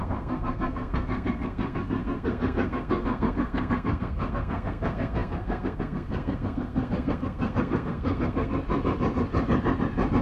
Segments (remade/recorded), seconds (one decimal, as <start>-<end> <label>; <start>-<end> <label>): 0.0-8.5 remade; 8.5-10.2 recorded